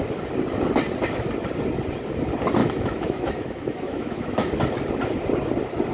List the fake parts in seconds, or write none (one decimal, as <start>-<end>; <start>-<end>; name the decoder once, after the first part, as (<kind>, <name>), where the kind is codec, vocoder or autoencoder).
2.6-4.5 (autoencoder, DAC-VAE)